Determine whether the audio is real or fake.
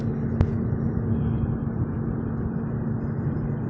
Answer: real